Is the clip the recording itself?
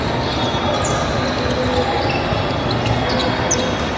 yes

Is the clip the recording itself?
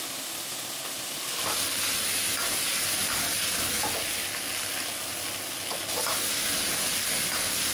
yes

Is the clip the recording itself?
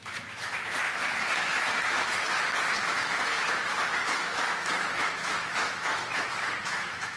no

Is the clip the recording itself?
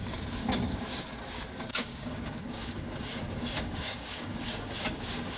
no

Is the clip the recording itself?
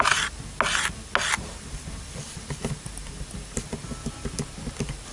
yes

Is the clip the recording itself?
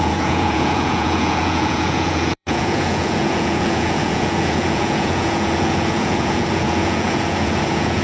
no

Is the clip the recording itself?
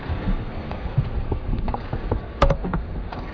no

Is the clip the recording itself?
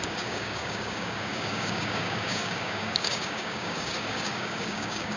no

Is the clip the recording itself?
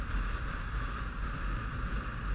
yes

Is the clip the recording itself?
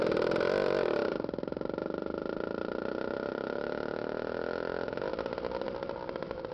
yes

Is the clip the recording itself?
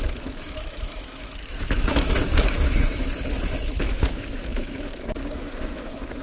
no